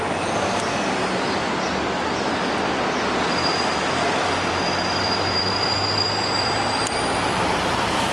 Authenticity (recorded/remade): remade